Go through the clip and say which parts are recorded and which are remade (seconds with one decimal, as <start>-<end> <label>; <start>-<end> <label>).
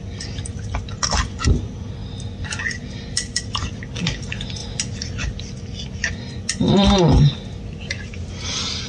0.0-8.9 recorded